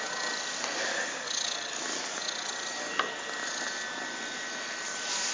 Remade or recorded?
recorded